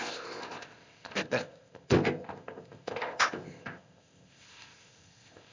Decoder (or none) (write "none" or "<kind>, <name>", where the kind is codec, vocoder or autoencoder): codec, ZipCodec